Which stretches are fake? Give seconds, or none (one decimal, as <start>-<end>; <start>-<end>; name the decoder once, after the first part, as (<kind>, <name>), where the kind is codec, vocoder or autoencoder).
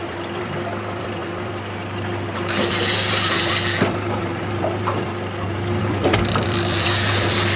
0.0-7.6 (vocoder, BigVGAN v2)